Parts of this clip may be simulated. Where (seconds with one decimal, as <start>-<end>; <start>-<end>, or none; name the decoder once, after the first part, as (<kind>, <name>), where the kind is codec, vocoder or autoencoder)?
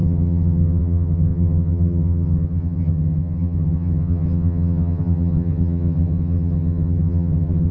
0.0-7.7 (vocoder, HiFi-GAN)